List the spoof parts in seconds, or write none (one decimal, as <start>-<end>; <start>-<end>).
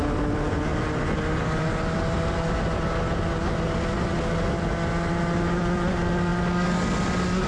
none